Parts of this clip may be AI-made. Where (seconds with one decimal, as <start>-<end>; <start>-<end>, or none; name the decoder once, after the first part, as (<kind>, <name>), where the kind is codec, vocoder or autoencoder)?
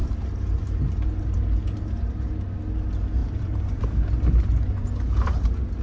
0.0-2.3 (vocoder, BigVGAN v2); 3.2-4.7